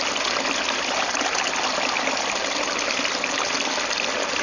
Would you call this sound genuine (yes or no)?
yes